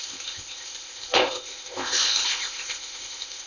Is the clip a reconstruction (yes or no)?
yes